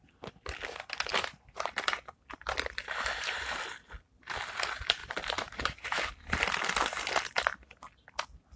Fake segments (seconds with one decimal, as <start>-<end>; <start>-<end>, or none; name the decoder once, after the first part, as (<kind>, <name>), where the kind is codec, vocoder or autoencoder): 1.1-1.8 (vocoder, BigVGAN v2); 2.8-3.6; 5.0-6.1